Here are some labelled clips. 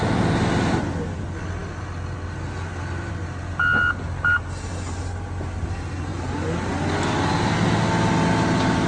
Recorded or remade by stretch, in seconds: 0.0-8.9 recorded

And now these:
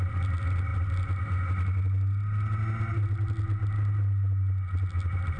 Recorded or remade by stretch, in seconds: 0.0-5.4 recorded